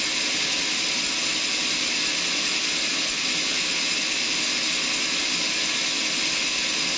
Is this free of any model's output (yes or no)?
yes